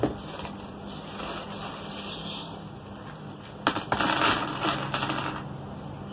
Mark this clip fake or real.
real